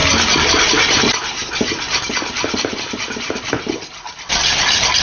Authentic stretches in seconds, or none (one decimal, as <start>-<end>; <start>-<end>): 0.0-5.0